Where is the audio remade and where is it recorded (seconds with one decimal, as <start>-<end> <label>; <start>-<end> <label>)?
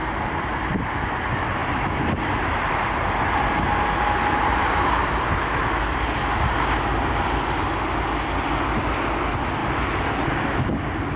0.0-11.2 recorded